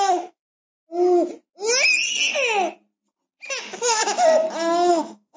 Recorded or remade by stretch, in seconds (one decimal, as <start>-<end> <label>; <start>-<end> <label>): 0.0-0.4 remade; 0.4-3.6 recorded; 3.6-4.0 remade; 4.0-4.9 recorded; 4.9-5.4 remade